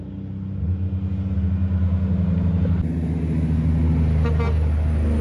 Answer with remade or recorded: recorded